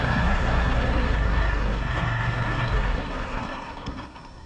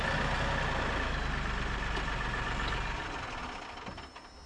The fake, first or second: first